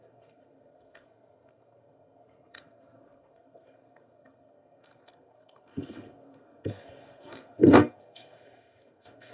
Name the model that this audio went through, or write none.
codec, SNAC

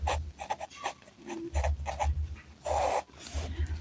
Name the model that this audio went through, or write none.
none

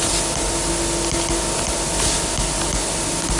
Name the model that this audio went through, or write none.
none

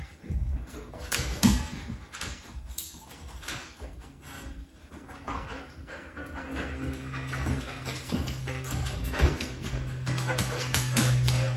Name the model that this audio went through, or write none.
codec, SNAC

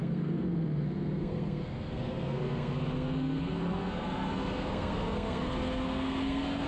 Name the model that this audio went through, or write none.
codec, SNAC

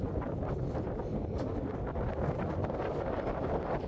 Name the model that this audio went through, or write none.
none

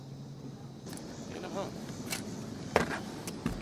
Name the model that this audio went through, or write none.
none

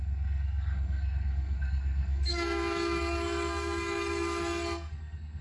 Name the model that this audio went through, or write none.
codec, SNAC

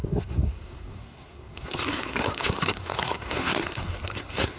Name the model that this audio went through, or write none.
codec, SNAC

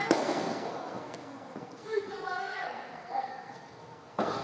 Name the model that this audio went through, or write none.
codec, SNAC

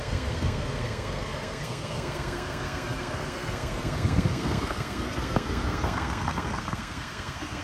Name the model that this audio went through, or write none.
codec, SNAC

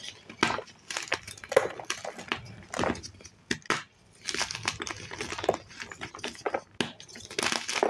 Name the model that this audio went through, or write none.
none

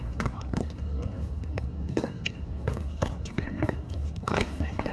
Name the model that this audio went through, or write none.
codec, SNAC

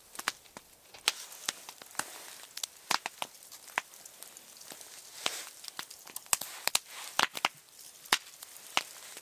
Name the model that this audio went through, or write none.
none